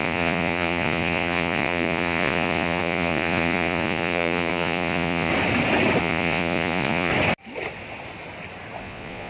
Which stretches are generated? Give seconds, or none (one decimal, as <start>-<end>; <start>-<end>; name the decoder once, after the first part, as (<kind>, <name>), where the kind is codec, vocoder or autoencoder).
0.0-5.3 (vocoder, Vocos); 6.0-7.1; 8.8-9.3